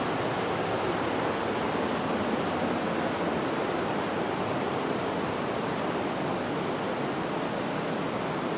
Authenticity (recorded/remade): recorded